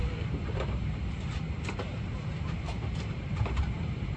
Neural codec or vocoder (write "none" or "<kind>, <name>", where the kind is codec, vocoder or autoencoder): vocoder, BigVGAN v2